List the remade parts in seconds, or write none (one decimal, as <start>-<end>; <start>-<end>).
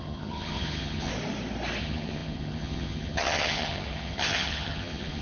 0.0-1.1; 1.8-5.2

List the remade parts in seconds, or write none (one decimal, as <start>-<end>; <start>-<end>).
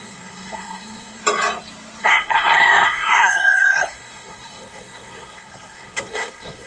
0.0-1.2; 2.0-6.7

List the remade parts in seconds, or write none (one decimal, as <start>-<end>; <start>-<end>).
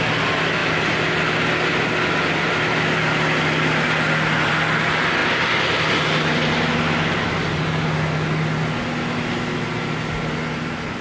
none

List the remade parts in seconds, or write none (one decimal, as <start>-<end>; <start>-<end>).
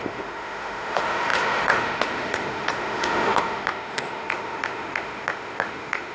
0.0-6.1